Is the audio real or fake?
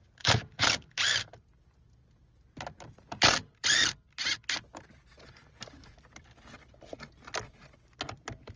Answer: real